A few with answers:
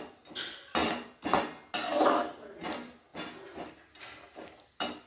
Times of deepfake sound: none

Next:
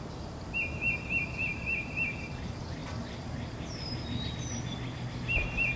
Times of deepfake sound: none

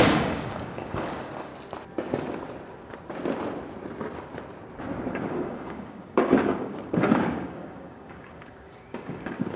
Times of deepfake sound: 0.0-1.5; 5.1-9.6

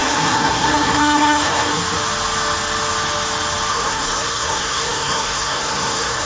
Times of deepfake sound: 0.0-1.7; 3.7-6.3

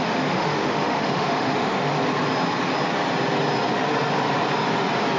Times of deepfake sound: 0.0-1.9

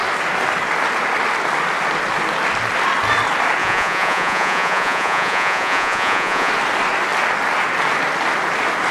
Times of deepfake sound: 3.6-6.5

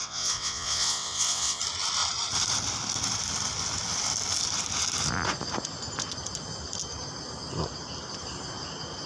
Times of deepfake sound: 0.0-1.6